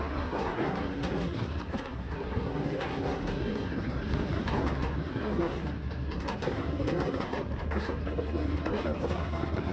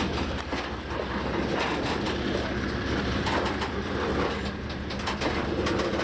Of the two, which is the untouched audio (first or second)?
second